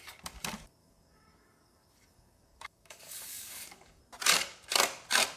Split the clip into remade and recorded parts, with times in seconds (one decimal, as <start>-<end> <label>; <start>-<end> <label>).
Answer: 0.0-0.8 recorded; 0.8-4.0 remade; 4.0-5.4 recorded